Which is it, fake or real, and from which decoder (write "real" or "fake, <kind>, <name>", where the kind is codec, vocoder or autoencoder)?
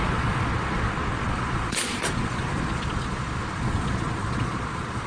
fake, vocoder, Vocos